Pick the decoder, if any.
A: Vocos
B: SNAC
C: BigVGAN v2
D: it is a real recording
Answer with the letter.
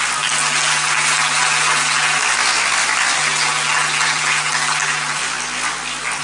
D